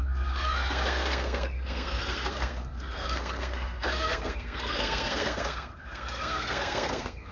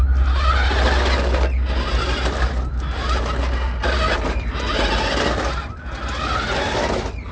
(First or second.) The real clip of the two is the second